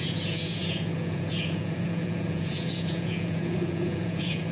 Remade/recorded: remade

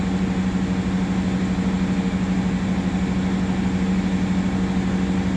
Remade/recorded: recorded